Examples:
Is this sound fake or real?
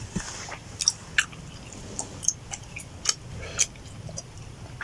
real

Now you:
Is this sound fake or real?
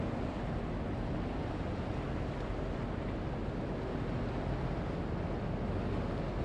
real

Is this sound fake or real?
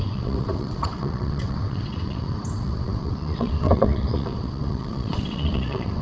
fake